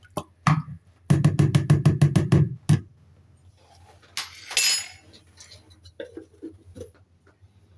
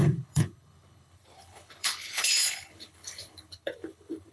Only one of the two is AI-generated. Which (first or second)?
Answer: second